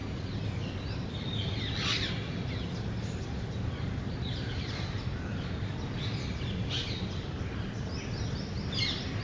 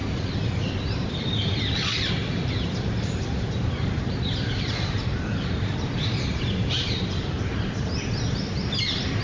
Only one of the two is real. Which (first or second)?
first